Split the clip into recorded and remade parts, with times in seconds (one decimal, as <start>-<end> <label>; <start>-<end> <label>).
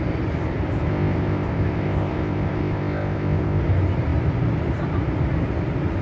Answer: 0.0-0.9 recorded; 0.9-3.6 remade; 3.6-6.0 recorded